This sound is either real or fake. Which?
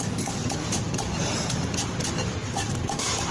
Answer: fake